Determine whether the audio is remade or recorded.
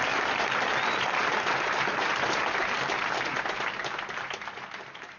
recorded